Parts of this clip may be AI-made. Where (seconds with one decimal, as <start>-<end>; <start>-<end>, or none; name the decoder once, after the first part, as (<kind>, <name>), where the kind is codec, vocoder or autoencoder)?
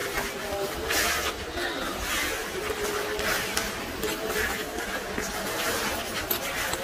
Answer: none